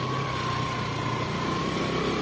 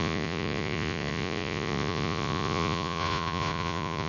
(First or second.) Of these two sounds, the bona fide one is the first